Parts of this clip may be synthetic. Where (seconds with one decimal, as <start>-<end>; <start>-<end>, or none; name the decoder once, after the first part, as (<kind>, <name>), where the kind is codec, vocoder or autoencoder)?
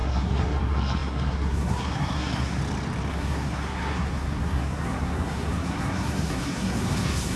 0.0-2.6 (codec, SNAC); 3.1-7.4